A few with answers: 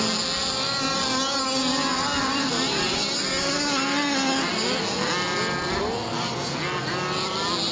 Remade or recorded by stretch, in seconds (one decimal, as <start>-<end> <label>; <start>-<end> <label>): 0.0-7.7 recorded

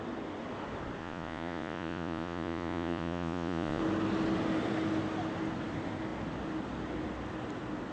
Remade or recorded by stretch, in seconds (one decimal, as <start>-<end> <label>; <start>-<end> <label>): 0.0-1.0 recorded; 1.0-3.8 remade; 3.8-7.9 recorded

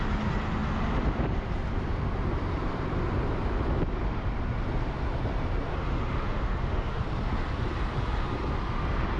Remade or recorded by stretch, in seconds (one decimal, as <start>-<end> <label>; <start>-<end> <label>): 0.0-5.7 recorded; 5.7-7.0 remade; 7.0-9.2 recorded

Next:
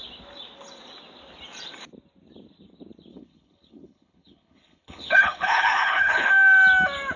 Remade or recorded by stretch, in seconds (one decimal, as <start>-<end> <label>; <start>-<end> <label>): 0.0-3.1 recorded; 3.1-6.3 remade; 6.3-7.2 recorded

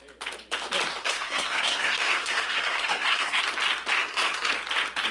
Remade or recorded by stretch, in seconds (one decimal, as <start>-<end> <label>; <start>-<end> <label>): 0.0-1.0 recorded; 1.0-3.4 remade; 3.4-4.0 recorded; 4.0-4.5 remade; 4.5-5.1 recorded